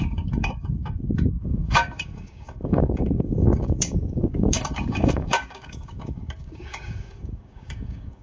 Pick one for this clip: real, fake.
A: fake